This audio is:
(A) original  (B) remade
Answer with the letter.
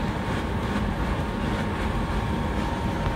A